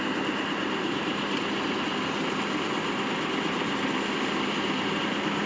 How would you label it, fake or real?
real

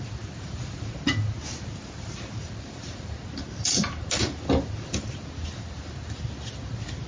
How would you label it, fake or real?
real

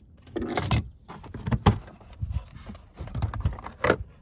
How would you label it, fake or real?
real